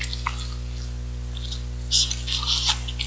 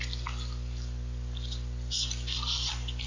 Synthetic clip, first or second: second